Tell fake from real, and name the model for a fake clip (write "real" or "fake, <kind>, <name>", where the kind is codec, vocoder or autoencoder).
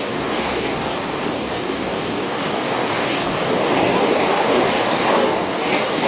fake, codec, DAC